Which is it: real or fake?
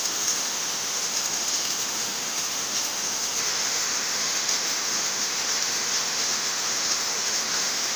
fake